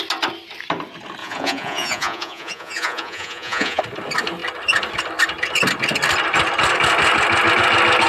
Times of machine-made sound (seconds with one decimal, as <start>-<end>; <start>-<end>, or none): 1.2-3.8